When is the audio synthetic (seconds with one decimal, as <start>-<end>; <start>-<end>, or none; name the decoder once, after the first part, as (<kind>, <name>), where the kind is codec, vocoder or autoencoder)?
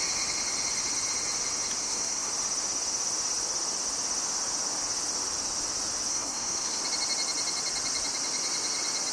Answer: 1.8-2.3 (codec, SNAC); 6.1-6.8